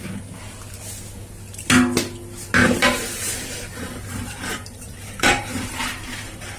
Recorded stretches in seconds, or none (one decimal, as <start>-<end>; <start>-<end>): 0.0-2.6